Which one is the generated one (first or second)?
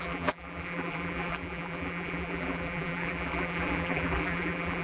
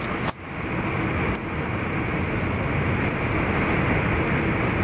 first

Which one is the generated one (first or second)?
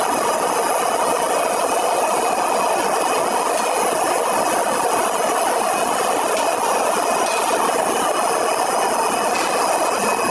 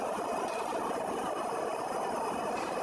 second